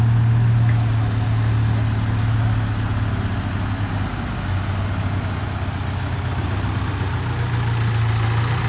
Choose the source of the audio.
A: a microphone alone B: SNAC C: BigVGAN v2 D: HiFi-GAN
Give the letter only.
A